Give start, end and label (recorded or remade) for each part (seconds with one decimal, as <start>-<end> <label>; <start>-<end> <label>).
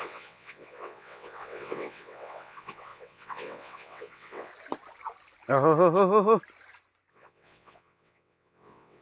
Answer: 0.0-4.5 remade; 4.5-7.1 recorded; 7.1-9.0 remade